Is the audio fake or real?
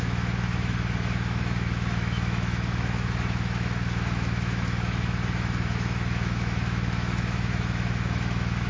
fake